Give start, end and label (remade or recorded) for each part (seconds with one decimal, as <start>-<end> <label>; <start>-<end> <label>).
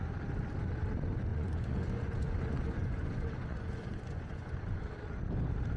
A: 0.0-1.3 recorded; 1.3-4.8 remade; 4.8-5.8 recorded